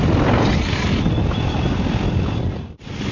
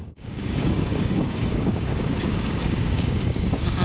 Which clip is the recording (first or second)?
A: first